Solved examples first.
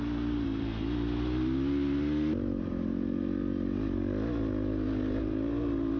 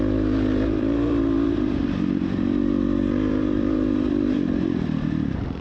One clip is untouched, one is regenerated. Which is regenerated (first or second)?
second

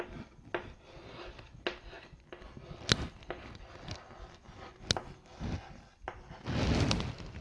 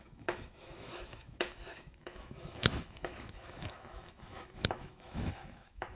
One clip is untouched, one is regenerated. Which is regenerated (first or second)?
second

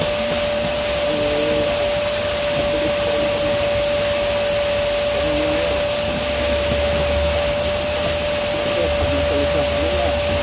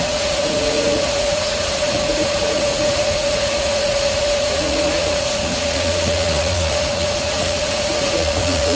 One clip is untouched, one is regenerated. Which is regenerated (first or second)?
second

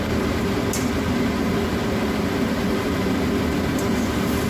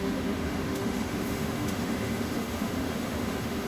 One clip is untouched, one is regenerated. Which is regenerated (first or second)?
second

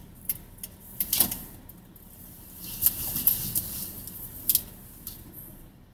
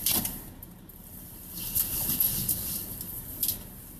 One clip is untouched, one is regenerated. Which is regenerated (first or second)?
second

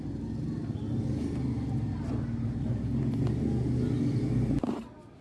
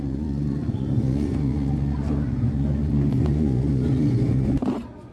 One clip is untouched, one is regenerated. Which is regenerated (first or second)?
second